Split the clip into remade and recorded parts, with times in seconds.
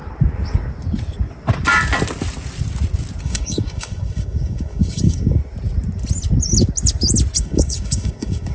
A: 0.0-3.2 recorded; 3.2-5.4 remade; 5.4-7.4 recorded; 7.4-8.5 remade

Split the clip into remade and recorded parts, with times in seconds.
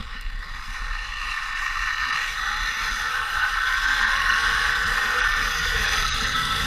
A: 0.0-2.4 remade; 2.4-3.1 recorded; 3.1-6.7 remade